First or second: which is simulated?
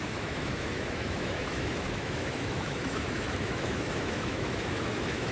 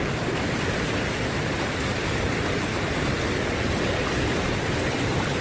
first